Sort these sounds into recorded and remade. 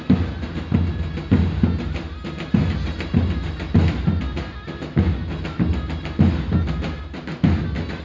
recorded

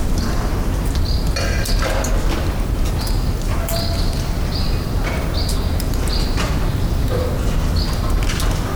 recorded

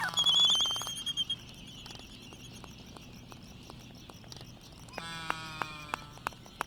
recorded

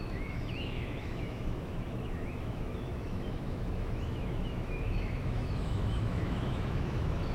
remade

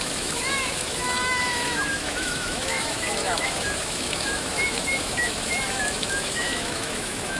remade